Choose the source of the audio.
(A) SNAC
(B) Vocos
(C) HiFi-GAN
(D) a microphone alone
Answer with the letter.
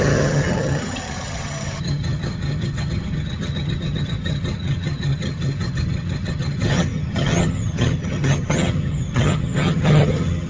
C